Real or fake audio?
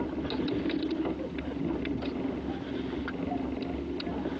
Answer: real